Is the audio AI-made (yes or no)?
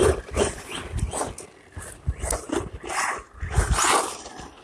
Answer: no